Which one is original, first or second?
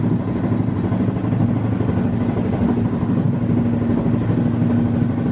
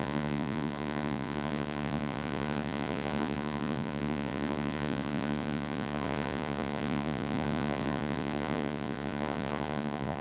first